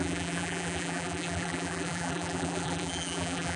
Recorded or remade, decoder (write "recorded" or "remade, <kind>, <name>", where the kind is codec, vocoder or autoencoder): remade, vocoder, BigVGAN v2